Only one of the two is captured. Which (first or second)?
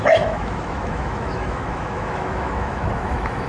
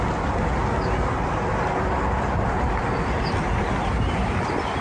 second